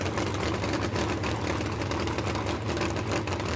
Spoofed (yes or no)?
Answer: no